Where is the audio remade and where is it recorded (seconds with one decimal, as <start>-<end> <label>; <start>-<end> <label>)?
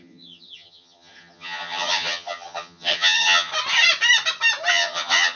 0.0-3.5 remade; 3.5-4.7 recorded; 4.7-5.4 remade